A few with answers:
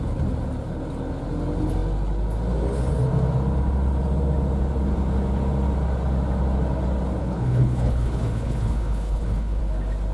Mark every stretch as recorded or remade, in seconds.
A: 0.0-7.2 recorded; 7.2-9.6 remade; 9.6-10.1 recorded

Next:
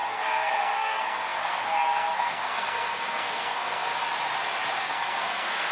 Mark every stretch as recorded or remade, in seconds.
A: 0.0-3.9 remade; 3.9-4.8 recorded; 4.8-5.7 remade

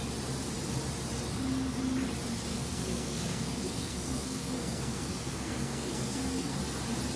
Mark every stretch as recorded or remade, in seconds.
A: 0.0-2.5 recorded; 2.5-6.6 remade; 6.6-7.2 recorded

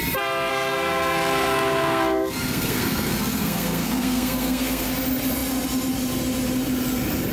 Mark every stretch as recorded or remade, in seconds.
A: 0.0-0.5 recorded; 0.5-4.9 remade; 4.9-7.3 recorded